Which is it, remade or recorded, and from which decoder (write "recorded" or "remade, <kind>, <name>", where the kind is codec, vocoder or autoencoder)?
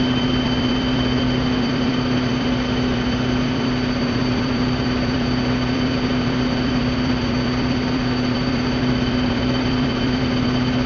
remade, vocoder, BigVGAN v2